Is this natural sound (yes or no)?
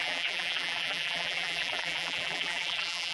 no